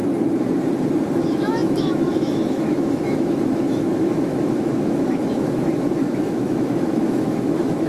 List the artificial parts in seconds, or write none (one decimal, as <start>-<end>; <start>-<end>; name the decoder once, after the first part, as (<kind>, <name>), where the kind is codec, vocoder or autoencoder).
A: 1.1-7.9 (autoencoder, DAC-VAE)